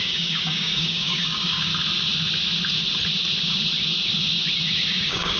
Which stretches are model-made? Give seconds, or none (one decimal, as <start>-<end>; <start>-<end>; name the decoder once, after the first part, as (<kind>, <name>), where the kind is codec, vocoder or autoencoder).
0.0-1.7 (codec, DAC); 4.9-5.4